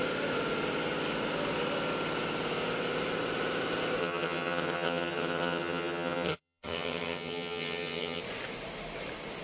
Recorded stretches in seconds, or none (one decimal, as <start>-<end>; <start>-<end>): 0.0-4.0; 8.2-9.4